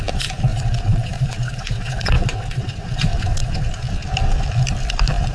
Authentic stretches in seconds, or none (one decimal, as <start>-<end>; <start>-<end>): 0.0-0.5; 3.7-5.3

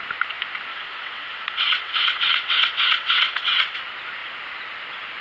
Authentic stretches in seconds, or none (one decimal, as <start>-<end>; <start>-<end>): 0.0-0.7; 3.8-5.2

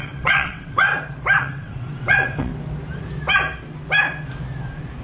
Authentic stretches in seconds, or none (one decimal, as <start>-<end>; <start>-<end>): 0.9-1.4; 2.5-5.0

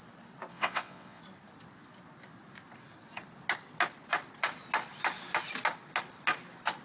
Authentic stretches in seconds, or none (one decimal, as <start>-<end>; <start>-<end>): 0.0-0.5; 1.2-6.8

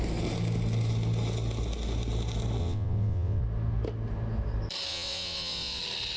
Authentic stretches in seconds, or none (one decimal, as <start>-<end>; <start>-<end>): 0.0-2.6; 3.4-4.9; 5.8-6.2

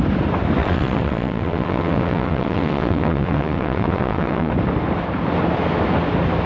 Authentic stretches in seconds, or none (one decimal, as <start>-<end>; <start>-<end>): 0.0-0.6; 4.5-6.5

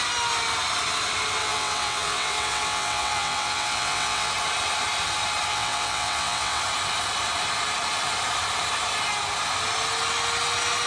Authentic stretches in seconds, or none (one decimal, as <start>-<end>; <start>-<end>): 0.0-1.4; 4.3-5.5; 6.6-10.9

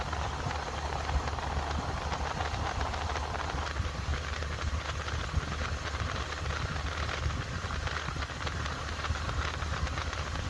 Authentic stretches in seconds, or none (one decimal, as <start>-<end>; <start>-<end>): 0.0-10.5